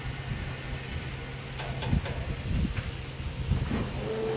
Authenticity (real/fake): real